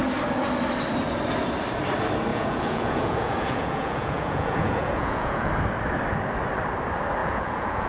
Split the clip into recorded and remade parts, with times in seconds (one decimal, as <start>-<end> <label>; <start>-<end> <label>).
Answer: 0.0-2.3 recorded; 2.3-5.5 remade; 5.5-7.2 recorded; 7.2-7.9 remade